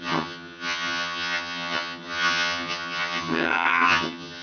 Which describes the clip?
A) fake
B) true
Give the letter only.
A